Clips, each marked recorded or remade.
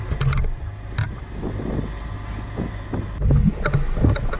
recorded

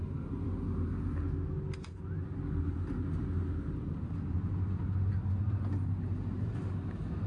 recorded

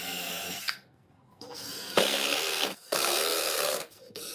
remade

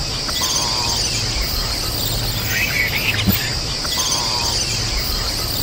recorded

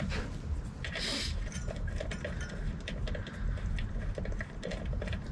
recorded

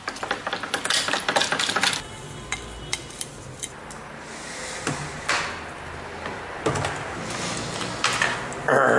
recorded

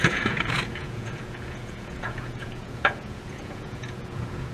remade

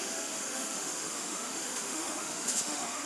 remade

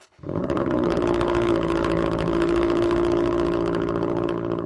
remade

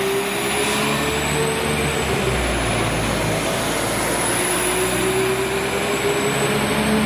recorded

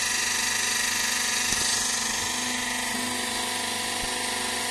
recorded